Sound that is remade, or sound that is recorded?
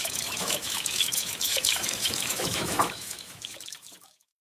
remade